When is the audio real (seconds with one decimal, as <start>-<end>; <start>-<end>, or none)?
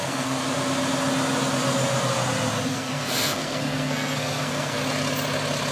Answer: 0.4-2.7; 4.8-5.7